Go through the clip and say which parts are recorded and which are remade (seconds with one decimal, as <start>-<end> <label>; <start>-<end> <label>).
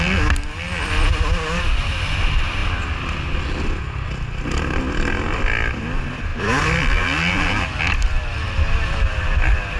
0.0-9.8 recorded